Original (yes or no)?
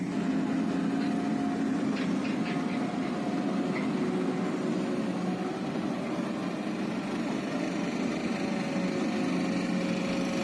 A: yes